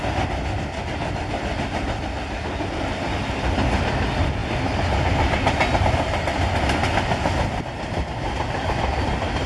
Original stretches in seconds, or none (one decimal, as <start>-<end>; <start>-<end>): 0.0-9.5